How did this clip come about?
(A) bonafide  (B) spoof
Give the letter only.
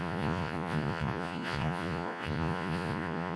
B